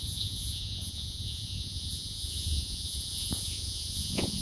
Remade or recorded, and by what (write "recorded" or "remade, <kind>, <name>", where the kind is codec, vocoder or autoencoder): remade, vocoder, Vocos